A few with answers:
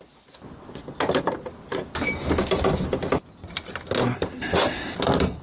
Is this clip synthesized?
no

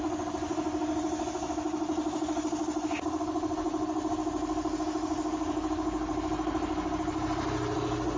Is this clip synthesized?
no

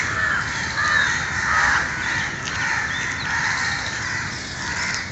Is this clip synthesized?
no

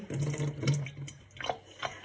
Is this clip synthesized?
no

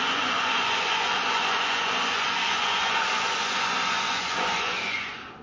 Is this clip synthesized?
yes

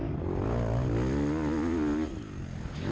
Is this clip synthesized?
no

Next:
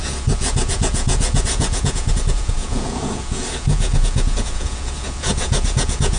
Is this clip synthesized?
yes